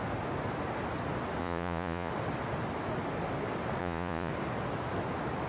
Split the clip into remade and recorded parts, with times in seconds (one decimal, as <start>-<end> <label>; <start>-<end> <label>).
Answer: 0.0-1.4 recorded; 1.4-2.1 remade; 2.1-3.8 recorded; 3.8-4.3 remade; 4.3-5.5 recorded